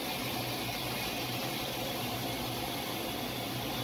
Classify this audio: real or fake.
real